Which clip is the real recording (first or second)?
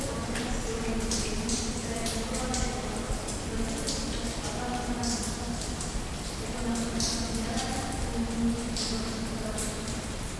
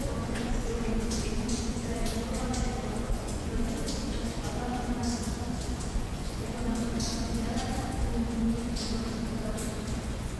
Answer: first